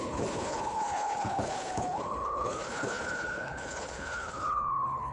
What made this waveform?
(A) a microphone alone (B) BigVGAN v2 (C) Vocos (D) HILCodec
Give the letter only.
D